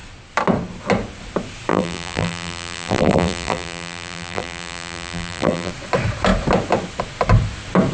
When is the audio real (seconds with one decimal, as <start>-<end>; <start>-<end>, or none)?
0.0-1.7; 5.7-7.9